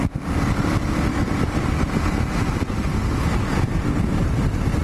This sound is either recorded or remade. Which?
recorded